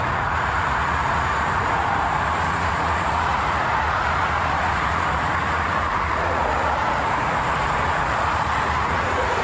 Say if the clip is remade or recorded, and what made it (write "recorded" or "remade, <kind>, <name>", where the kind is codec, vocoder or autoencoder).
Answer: remade, vocoder, Vocos